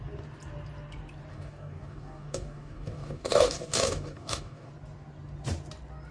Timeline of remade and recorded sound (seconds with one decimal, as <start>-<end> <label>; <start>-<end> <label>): 0.0-1.3 recorded; 1.3-4.7 remade; 4.7-6.1 recorded